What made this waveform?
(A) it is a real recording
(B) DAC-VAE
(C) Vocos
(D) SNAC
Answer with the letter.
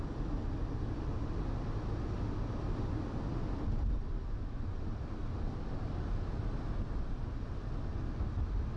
A